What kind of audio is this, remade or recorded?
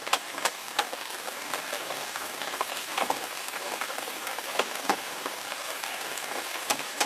remade